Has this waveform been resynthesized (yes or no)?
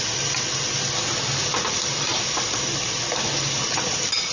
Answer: no